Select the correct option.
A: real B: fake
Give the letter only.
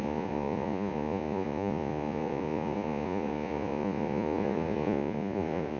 B